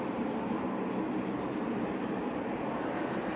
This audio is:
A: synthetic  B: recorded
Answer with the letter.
A